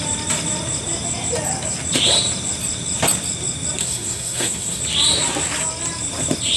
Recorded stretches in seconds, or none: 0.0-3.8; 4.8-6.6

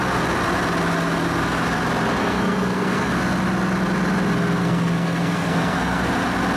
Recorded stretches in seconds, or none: 0.0-2.2; 3.1-4.6; 6.1-6.6

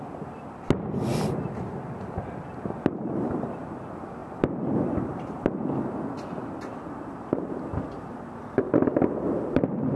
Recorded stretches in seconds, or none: 0.0-10.0

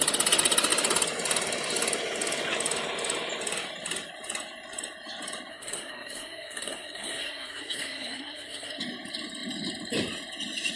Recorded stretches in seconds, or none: 0.0-5.5; 8.8-10.8

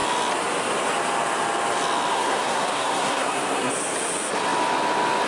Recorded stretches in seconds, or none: 0.0-2.1; 3.7-5.3

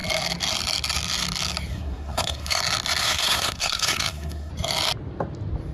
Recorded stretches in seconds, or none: 0.0-1.7; 2.6-3.0; 4.5-5.7

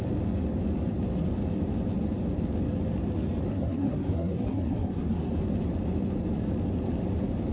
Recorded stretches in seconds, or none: 0.0-3.5; 5.3-7.5